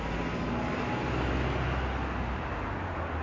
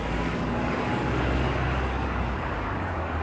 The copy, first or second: second